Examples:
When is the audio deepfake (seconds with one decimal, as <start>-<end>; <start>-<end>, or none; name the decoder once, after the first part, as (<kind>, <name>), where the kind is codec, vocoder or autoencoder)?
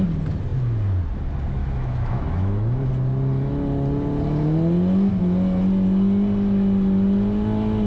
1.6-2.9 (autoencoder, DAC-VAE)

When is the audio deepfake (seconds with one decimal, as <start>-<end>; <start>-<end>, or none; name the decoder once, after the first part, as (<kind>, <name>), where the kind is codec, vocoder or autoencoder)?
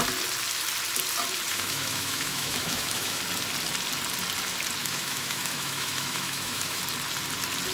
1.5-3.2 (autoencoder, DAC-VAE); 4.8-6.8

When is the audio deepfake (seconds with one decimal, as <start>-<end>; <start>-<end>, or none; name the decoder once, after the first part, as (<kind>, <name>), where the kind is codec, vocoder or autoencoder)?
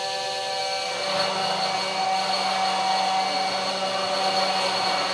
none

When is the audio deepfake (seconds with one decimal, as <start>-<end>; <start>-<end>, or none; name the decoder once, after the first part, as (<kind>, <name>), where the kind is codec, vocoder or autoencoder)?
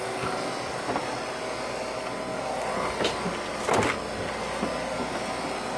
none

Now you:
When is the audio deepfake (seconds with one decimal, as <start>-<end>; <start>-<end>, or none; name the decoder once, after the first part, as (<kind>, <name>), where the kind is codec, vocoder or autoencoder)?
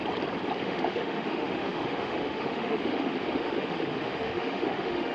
0.6-5.1 (autoencoder, DAC-VAE)